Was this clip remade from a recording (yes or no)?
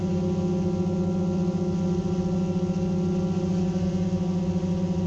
no